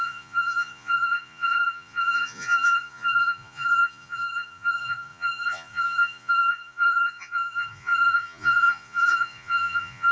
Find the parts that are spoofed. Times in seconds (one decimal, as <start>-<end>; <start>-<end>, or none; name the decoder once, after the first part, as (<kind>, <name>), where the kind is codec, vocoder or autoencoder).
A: 0.0-10.1 (vocoder, Vocos)